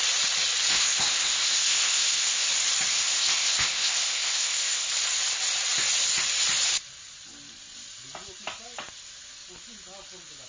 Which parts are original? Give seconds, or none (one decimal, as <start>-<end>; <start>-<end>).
0.0-0.7; 2.5-2.9; 4.9-10.5